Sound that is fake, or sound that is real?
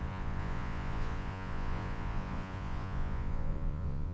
fake